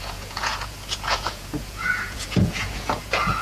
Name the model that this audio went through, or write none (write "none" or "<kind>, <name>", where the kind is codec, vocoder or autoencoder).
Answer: vocoder, Vocos